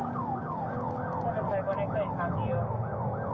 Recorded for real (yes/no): yes